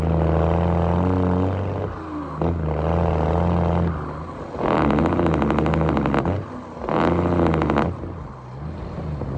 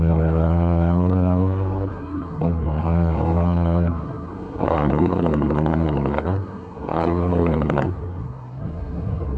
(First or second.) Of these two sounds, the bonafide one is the first